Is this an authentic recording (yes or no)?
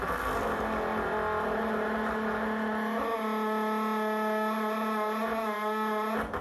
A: yes